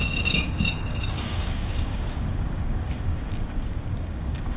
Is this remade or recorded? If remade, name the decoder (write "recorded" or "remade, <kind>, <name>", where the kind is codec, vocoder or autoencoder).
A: remade, codec, DAC